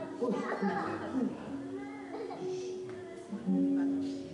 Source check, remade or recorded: recorded